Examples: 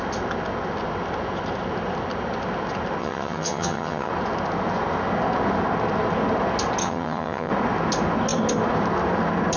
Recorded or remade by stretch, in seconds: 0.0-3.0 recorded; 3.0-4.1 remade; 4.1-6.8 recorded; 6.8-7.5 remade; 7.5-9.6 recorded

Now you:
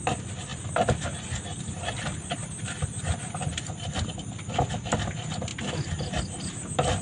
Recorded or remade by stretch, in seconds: 0.0-7.0 recorded